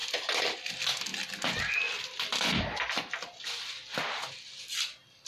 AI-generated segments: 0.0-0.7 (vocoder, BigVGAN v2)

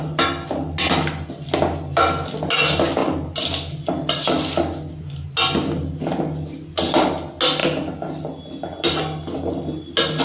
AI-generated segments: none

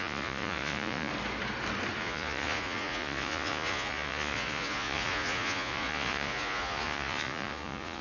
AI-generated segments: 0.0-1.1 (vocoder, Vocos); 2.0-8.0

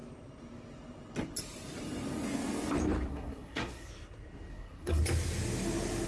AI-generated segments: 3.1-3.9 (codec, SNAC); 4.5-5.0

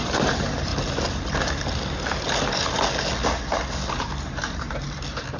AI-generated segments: 0.0-0.7 (vocoder, BigVGAN v2); 3.9-5.4

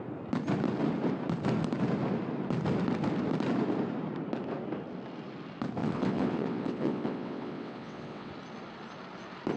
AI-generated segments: 5.8-8.3 (vocoder, WaveNeXt)